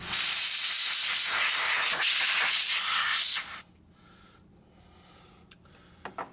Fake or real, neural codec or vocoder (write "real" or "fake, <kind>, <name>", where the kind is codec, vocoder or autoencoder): real